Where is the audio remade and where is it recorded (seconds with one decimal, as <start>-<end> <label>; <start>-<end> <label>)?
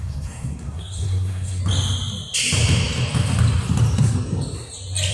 0.0-1.6 remade; 1.6-5.1 recorded